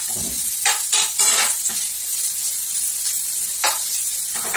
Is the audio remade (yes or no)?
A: no